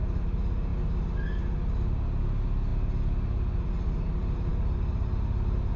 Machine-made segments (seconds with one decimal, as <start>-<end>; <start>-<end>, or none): none